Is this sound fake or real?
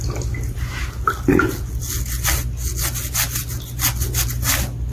real